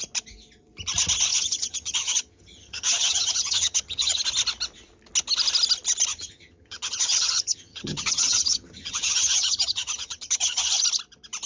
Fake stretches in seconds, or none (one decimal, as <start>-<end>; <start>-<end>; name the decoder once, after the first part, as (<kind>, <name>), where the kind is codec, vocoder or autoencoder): 1.3-4.2 (vocoder, HiFi-GAN); 6.1-10.8